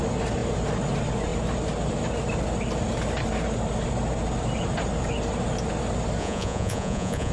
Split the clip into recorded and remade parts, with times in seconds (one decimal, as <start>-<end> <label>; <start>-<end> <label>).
0.0-6.2 recorded; 6.2-7.3 remade